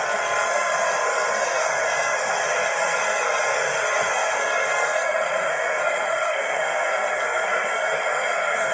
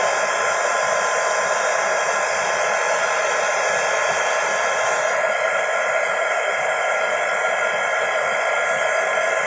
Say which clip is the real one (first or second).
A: second